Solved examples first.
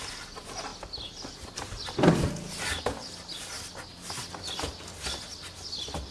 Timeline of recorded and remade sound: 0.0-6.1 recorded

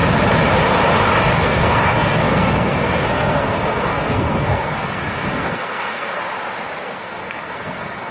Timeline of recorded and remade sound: 0.0-1.2 recorded; 1.2-6.2 remade; 6.2-6.8 recorded; 6.8-8.1 remade

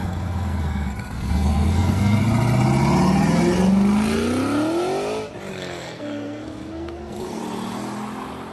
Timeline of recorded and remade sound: 0.0-2.2 remade; 2.2-5.5 recorded; 5.5-7.4 remade; 7.4-8.5 recorded

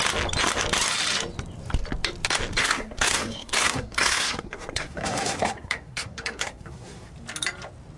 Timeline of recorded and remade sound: 0.0-2.6 recorded; 2.6-7.1 remade; 7.1-8.0 recorded

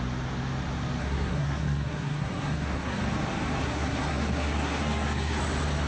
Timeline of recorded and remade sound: 0.0-1.0 recorded; 1.0-3.0 remade; 3.0-3.6 recorded; 3.6-5.4 remade; 5.4-5.9 recorded